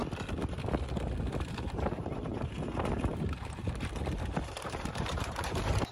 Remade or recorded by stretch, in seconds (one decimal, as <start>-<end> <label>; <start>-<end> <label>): 0.0-1.4 recorded; 1.4-5.9 remade